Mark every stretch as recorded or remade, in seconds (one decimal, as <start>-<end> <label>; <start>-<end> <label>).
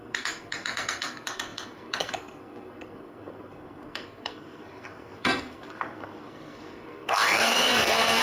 0.0-8.2 remade